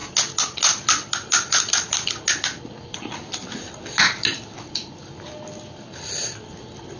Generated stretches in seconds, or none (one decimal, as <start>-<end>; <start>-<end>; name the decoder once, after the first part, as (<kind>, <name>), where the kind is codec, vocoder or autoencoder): none